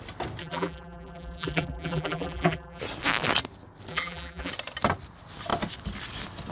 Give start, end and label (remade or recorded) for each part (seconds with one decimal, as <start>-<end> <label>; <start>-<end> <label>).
0.0-0.4 recorded; 0.4-2.8 remade; 2.8-3.9 recorded; 3.9-4.5 remade; 4.5-6.5 recorded